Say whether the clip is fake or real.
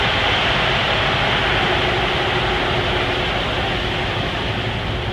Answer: real